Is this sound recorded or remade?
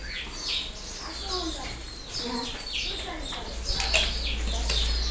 recorded